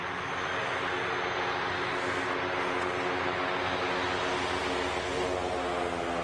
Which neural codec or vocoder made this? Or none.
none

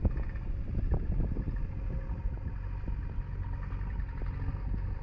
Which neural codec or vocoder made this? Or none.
none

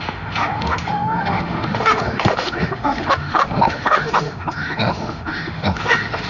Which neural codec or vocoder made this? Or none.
autoencoder, DAC-VAE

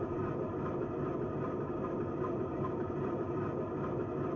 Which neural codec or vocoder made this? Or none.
none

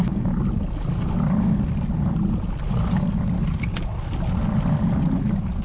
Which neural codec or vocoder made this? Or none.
none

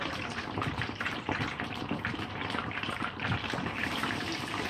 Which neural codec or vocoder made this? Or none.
vocoder, BigVGAN v2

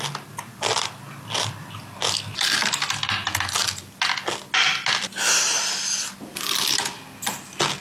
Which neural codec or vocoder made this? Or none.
none